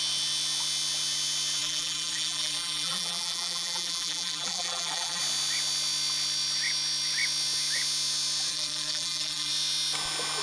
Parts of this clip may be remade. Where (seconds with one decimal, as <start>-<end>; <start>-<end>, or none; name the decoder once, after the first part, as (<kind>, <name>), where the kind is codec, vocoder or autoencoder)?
1.6-5.2 (vocoder, BigVGAN v2); 8.5-9.5